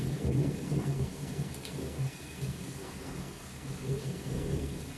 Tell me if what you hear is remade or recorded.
remade